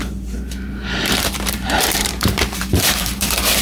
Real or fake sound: fake